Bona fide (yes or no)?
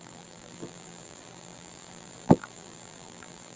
no